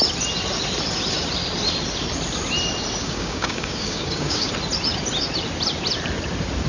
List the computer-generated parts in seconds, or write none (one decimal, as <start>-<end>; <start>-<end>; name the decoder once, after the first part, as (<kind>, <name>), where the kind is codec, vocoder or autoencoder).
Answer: 3.0-4.5 (codec, DAC)